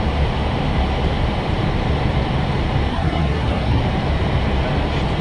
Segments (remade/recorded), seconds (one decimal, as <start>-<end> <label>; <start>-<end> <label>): 0.0-2.9 recorded; 2.9-3.8 remade; 3.8-5.2 recorded